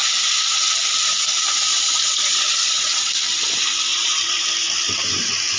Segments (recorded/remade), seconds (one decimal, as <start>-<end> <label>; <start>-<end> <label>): 0.0-1.7 recorded; 1.7-3.1 remade; 3.1-3.9 recorded; 3.9-4.4 remade; 4.4-5.6 recorded

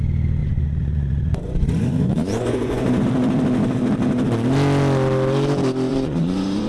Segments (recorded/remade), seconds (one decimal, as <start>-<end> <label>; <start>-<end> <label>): 0.0-0.4 recorded; 0.4-3.0 remade; 3.0-5.9 recorded; 5.9-6.7 remade